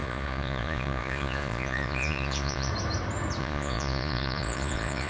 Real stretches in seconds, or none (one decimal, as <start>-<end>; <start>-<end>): 2.7-3.4